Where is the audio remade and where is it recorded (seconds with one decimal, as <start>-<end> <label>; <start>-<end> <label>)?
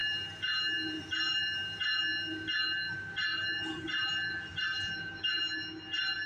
0.0-2.0 remade; 2.0-3.3 recorded; 3.3-5.2 remade; 5.2-6.3 recorded